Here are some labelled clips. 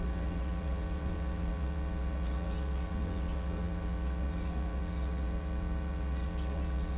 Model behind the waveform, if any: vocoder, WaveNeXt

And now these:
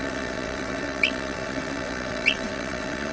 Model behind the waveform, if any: vocoder, WaveNeXt